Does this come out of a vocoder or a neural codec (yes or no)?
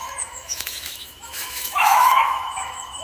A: yes